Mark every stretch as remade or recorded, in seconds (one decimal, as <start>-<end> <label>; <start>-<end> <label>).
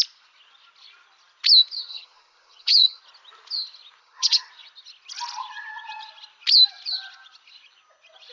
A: 0.0-1.9 recorded; 1.9-3.0 remade; 3.0-4.0 recorded; 4.0-4.5 remade; 4.5-8.3 recorded